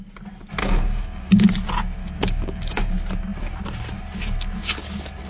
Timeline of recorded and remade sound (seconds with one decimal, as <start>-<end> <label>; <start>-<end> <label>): 0.0-0.6 recorded; 0.6-1.3 remade; 1.3-2.0 recorded; 2.0-2.9 remade; 2.9-5.3 recorded